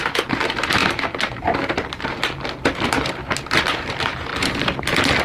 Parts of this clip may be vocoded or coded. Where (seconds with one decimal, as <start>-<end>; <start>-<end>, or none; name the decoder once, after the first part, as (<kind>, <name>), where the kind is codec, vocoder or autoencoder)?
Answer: 0.0-4.3 (vocoder, BigVGAN v2)